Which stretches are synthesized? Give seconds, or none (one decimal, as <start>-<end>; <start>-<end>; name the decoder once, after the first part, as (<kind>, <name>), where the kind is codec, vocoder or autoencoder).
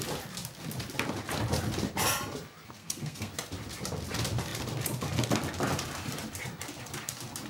2.8-3.3 (codec, SNAC)